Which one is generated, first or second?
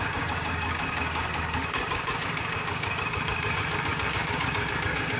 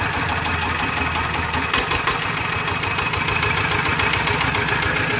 first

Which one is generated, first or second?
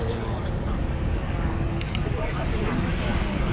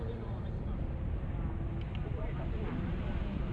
first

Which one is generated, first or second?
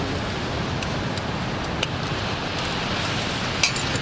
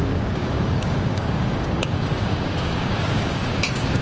second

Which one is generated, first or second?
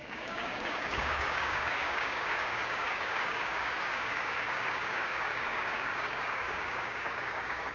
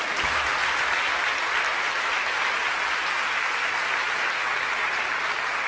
first